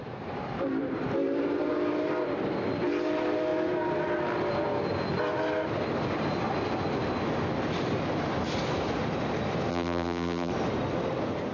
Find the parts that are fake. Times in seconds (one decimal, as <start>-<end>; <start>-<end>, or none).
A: 9.7-10.5